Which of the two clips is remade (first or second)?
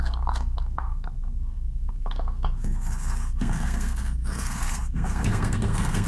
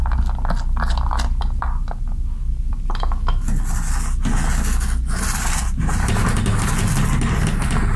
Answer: first